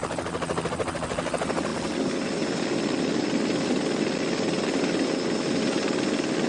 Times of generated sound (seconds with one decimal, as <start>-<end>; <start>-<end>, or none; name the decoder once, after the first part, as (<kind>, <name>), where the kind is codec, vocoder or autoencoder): none